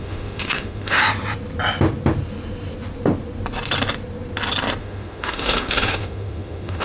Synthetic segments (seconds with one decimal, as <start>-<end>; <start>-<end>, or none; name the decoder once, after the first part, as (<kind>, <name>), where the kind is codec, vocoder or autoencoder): 0.0-1.0 (autoencoder, DAC-VAE); 4.8-6.8